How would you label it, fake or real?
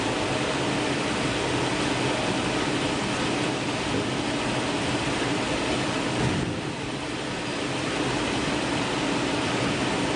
real